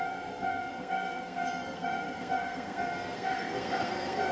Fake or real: fake